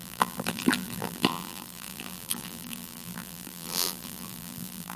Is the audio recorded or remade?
remade